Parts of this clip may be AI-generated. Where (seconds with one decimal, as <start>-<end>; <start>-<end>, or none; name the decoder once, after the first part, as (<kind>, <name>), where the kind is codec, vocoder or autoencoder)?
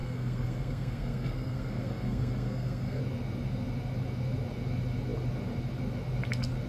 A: 0.0-3.0 (codec, SNAC)